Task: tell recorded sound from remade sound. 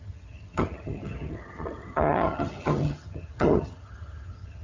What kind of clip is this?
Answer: remade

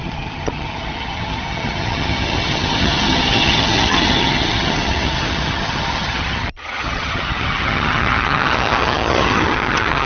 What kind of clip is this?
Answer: remade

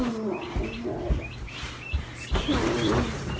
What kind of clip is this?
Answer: recorded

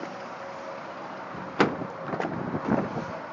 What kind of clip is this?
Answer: recorded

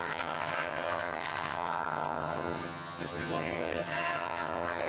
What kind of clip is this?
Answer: remade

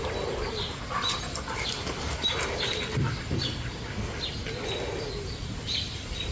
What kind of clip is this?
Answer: recorded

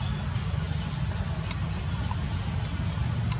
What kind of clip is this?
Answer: recorded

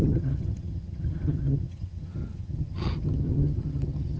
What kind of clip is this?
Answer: remade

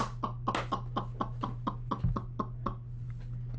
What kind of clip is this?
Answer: recorded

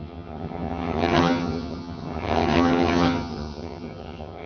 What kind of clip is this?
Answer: remade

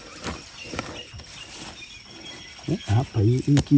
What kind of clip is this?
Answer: recorded